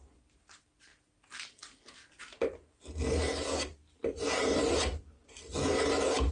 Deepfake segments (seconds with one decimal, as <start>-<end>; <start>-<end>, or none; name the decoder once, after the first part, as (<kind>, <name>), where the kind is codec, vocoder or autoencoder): none